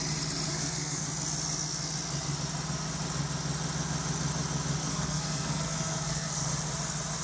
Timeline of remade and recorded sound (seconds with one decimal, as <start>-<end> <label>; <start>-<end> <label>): 0.0-0.5 recorded; 0.5-1.1 remade; 1.1-4.8 recorded; 4.8-6.5 remade; 6.5-7.2 recorded